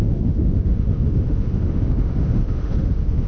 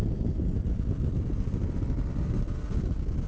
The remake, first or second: first